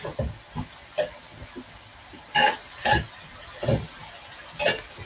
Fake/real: real